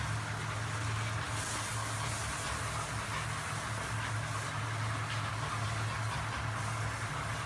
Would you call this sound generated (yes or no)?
no